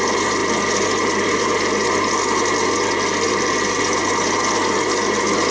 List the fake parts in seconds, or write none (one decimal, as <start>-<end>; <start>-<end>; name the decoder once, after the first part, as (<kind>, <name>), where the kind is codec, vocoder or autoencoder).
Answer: none